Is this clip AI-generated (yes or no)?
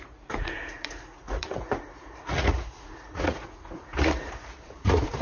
yes